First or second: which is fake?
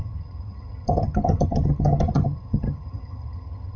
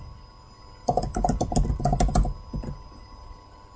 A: first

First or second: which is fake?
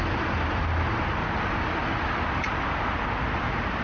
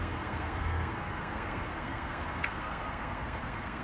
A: second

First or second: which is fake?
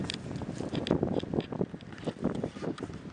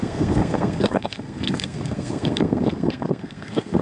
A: second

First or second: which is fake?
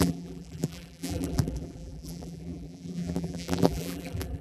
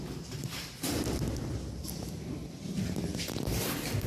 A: first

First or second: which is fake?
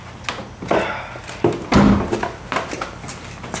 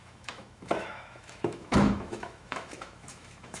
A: second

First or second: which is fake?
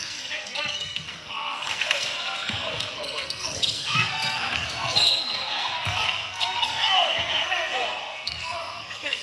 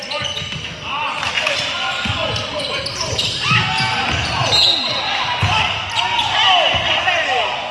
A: first